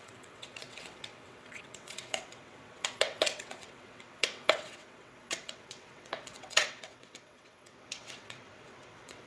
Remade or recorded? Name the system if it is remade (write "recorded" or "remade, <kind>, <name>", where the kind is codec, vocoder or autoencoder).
remade, vocoder, WaveNeXt